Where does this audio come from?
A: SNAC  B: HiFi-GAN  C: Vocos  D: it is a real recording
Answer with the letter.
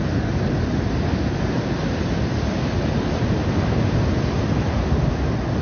D